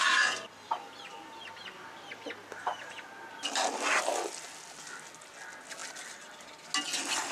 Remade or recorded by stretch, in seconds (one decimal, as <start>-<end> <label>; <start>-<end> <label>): 0.0-7.3 recorded